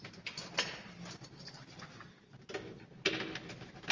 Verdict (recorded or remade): recorded